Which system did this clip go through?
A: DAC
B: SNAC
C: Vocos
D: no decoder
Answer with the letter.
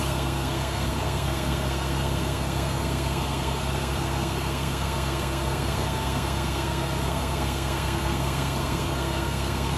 B